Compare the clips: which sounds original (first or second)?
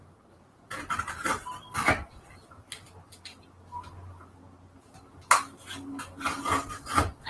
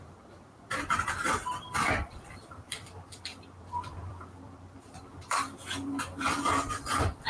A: first